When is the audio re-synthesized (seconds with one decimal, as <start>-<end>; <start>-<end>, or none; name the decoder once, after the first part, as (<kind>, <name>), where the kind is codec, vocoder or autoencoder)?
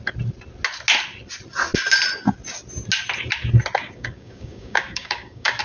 3.8-5.6 (codec, DAC)